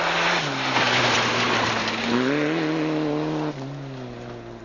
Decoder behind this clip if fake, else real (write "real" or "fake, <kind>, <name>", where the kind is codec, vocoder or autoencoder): real